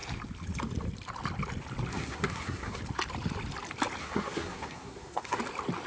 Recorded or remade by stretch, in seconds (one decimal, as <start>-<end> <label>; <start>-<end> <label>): 0.0-1.9 recorded; 1.9-2.8 remade; 2.8-4.0 recorded; 4.0-5.4 remade; 5.4-5.9 recorded